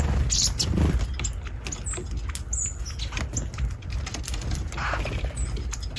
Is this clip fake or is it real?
real